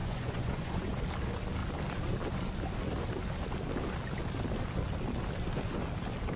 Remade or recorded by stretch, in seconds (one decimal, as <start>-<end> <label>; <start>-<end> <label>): 0.0-1.0 remade; 1.0-6.4 recorded